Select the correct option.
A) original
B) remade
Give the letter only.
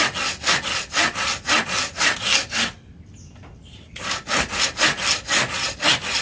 A